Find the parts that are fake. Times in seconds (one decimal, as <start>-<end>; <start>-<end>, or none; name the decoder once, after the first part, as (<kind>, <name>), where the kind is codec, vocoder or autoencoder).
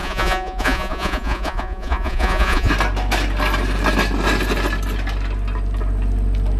0.0-2.7 (vocoder, Vocos)